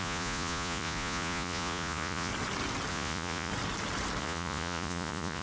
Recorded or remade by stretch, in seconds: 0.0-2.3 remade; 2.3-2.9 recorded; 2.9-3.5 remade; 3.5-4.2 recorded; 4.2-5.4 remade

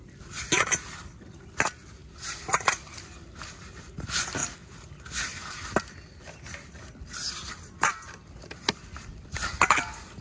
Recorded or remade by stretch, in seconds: 0.0-10.2 recorded

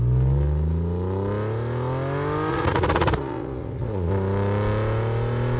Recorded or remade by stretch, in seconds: 0.0-2.5 recorded; 2.5-4.1 remade; 4.1-5.6 recorded

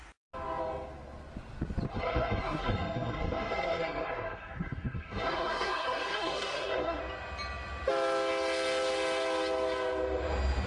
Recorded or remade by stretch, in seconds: 0.0-1.9 recorded; 1.9-7.0 remade; 7.0-10.7 recorded

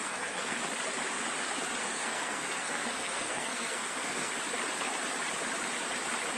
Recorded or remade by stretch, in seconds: 0.0-0.6 remade; 0.6-1.8 recorded; 1.8-4.3 remade; 4.3-6.4 recorded